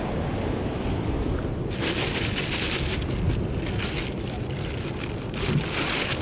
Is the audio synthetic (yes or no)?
no